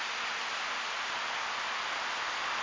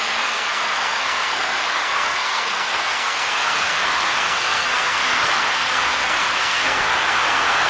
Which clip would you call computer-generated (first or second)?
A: second